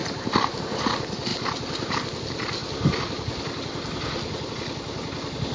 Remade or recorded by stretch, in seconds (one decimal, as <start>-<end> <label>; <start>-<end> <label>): 0.0-5.5 recorded